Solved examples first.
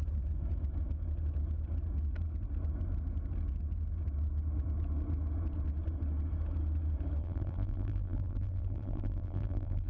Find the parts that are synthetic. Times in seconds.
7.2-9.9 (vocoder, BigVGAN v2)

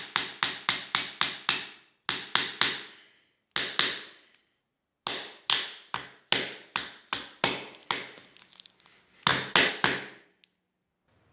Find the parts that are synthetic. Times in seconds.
none

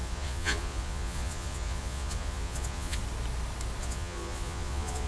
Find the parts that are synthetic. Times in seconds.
0.0-3.0 (vocoder, Vocos); 3.8-5.1

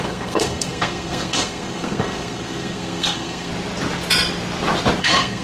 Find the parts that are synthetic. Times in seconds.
0.0-3.5 (codec, SNAC); 5.0-5.4

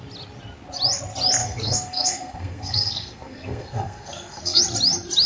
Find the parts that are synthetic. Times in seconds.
1.4-4.6 (codec, SNAC)

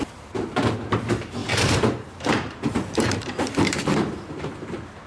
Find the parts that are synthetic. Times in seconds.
1.4-4.5 (vocoder, BigVGAN v2)